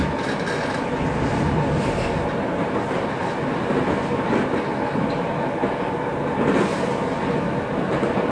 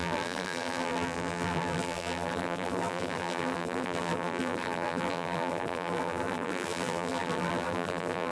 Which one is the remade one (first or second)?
second